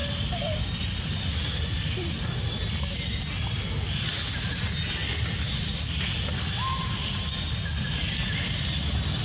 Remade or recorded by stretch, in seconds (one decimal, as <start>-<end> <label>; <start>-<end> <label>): 0.0-3.9 remade; 3.9-5.0 recorded; 5.0-7.3 remade; 7.3-9.2 recorded